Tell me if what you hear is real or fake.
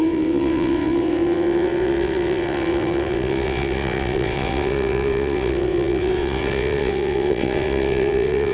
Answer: fake